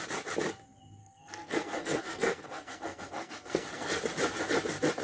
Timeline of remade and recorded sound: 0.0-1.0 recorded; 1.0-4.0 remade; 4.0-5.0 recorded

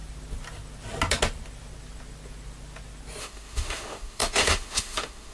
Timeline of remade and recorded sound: 0.0-3.2 recorded; 3.2-5.3 remade

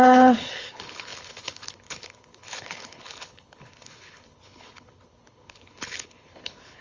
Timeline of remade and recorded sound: 0.0-6.8 remade

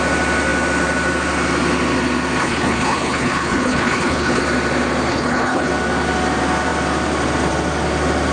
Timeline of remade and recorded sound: 0.0-2.4 recorded; 2.4-4.4 remade; 4.4-5.1 recorded; 5.1-5.7 remade; 5.7-8.3 recorded